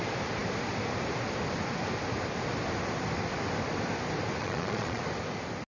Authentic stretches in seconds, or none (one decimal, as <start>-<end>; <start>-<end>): 0.0-4.4; 5.0-5.7